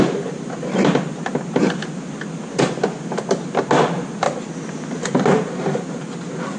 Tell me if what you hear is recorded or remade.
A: recorded